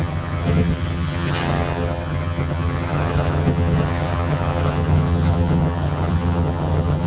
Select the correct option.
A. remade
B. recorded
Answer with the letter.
A